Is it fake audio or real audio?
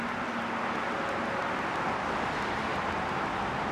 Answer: real